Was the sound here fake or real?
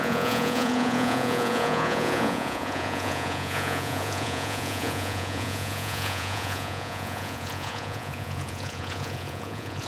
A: fake